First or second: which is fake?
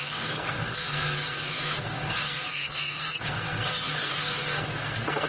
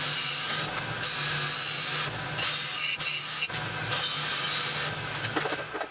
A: first